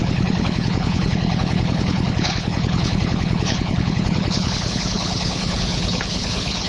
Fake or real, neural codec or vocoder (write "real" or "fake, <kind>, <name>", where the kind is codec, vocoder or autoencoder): fake, codec, HILCodec